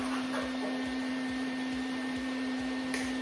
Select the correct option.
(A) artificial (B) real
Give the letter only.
A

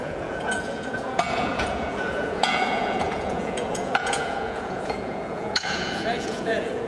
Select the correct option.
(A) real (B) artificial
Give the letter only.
B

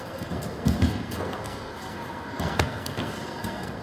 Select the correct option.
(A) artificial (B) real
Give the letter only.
A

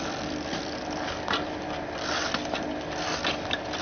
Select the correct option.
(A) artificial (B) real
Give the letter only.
A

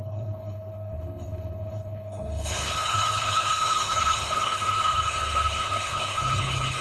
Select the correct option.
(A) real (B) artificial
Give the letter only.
B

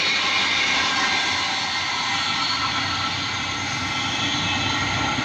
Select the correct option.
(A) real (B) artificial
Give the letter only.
A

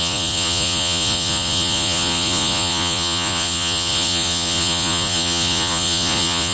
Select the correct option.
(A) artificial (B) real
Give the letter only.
A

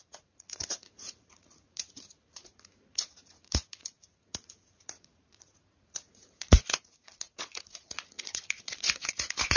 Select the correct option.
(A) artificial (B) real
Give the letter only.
A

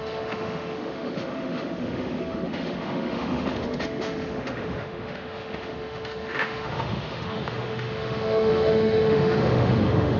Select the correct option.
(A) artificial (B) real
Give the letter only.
A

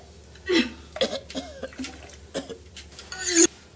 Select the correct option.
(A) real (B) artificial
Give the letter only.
A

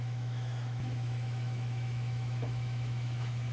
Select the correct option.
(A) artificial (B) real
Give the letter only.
A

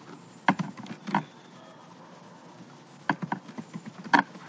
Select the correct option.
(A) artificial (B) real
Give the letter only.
B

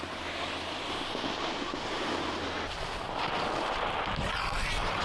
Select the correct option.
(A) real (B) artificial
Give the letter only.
A